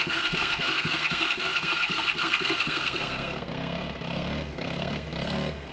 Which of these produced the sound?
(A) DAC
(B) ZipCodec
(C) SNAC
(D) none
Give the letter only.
C